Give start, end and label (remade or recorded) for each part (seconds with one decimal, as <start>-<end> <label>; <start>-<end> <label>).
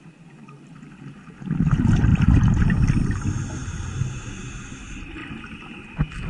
0.0-6.3 recorded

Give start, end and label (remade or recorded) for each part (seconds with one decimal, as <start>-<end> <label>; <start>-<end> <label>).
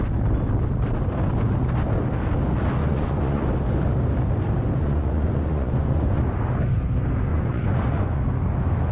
0.0-2.8 recorded; 2.8-3.4 remade; 3.4-4.8 recorded; 4.8-6.2 remade; 6.2-7.3 recorded; 7.3-8.2 remade; 8.2-8.9 recorded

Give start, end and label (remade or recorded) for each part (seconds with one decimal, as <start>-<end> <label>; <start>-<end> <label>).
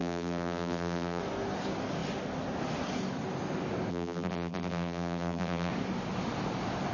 0.0-1.2 remade; 1.2-3.9 recorded; 3.9-5.7 remade; 5.7-6.9 recorded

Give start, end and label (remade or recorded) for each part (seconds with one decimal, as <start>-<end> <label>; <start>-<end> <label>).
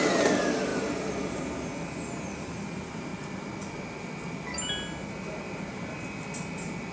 0.0-6.9 recorded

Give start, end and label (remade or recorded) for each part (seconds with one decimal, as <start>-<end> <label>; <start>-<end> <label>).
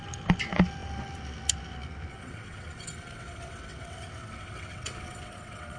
0.0-2.1 recorded; 2.1-5.8 remade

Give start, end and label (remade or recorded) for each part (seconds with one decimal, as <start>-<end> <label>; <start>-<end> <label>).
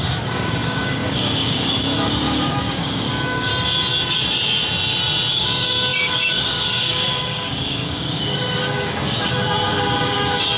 0.0-3.5 remade; 3.5-5.3 recorded; 5.3-10.6 remade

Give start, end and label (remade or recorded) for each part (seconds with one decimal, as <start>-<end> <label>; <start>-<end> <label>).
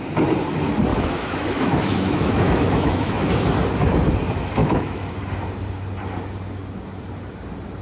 0.0-0.9 recorded; 0.9-3.3 remade; 3.3-4.6 recorded; 4.6-5.1 remade; 5.1-7.8 recorded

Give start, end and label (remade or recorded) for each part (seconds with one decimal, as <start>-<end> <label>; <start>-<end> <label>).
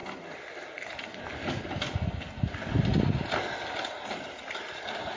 0.0-5.2 recorded